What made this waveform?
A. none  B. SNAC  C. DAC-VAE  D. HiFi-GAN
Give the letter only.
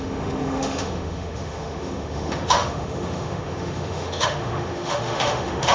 C